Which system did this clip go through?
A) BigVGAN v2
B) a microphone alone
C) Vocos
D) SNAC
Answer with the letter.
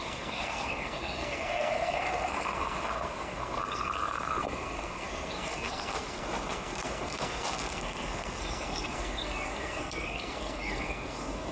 D